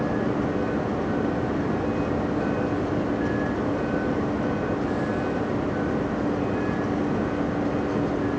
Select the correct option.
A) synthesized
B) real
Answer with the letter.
B